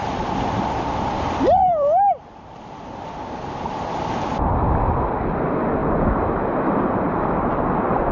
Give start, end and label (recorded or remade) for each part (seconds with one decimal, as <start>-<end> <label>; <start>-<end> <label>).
0.0-4.2 remade; 4.2-8.1 recorded